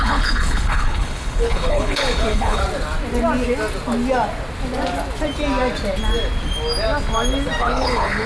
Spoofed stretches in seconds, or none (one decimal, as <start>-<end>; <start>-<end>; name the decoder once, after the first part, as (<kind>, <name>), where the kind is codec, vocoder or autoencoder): 0.0-2.6 (codec, HILCodec); 7.6-8.3